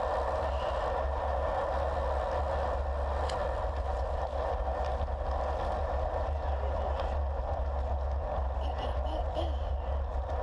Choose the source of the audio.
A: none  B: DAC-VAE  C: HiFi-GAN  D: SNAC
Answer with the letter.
A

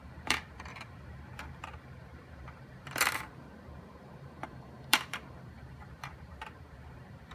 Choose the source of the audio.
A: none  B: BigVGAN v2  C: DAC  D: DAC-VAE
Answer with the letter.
B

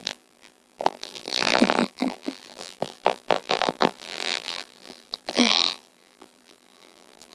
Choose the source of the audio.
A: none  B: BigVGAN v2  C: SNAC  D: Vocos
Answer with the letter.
B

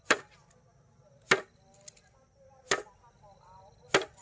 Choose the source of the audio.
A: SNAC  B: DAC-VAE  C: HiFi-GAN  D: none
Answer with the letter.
D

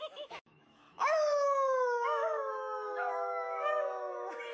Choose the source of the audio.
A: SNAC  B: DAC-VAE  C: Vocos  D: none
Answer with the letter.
B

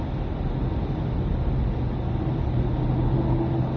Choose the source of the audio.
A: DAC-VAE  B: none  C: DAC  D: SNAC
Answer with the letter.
B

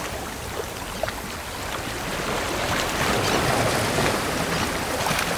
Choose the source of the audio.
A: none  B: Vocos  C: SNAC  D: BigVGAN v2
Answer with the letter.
A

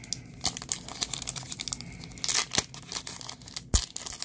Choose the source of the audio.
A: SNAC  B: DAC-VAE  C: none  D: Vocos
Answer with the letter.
C